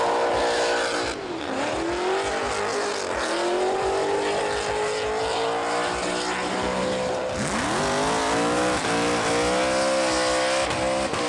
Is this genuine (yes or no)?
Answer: yes